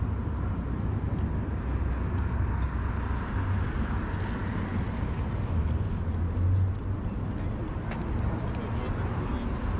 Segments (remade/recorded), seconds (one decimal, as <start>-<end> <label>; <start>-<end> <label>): 0.0-9.8 recorded